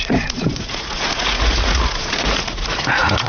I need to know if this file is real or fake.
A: fake